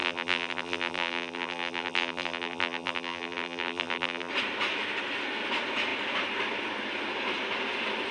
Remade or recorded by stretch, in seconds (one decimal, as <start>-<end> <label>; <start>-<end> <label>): 0.0-4.3 remade; 4.3-8.1 recorded